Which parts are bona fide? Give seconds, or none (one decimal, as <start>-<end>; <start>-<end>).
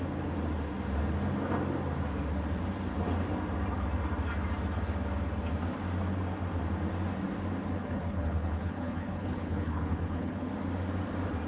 0.0-7.8; 10.5-11.5